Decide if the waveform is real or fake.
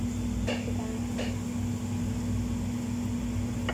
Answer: real